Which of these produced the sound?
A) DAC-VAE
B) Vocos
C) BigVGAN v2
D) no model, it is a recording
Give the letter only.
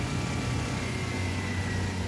B